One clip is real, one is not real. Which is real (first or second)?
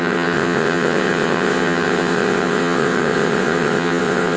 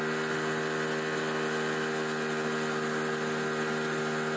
second